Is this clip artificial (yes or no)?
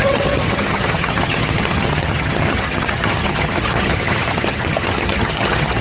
yes